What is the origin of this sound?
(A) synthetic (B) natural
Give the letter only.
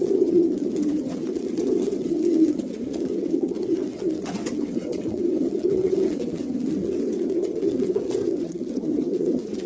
A